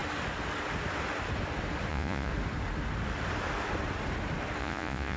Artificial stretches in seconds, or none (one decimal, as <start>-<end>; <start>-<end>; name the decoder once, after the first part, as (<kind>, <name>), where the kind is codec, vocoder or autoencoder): 1.9-2.3 (vocoder, Vocos); 4.6-5.2